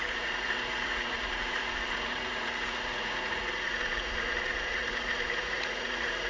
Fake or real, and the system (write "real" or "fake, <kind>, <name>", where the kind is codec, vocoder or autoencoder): fake, vocoder, Vocos